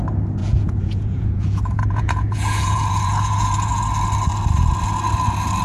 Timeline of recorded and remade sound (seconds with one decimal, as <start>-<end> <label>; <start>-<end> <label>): 0.0-0.4 recorded; 0.4-3.8 remade; 3.8-5.6 recorded